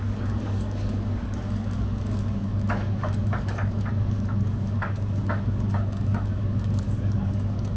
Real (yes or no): no